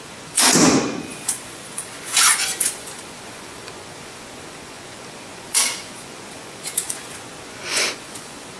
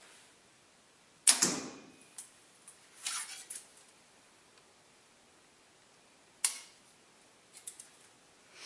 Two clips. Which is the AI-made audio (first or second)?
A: first